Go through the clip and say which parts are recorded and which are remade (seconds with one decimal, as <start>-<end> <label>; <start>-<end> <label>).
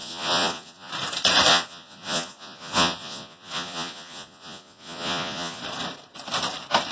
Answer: 0.0-0.9 remade; 0.9-1.5 recorded; 1.5-5.6 remade; 5.6-6.9 recorded